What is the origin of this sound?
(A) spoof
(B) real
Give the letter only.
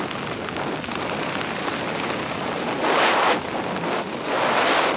B